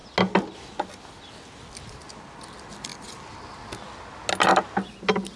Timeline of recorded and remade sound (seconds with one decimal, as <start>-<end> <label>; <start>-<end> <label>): 0.0-5.4 recorded